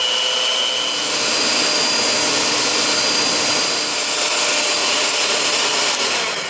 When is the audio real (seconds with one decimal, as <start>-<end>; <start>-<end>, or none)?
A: 0.0-4.8; 5.4-6.5